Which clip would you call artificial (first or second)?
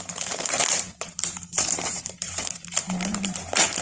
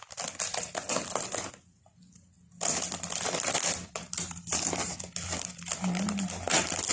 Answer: first